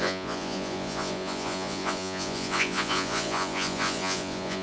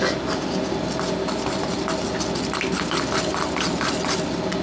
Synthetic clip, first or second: first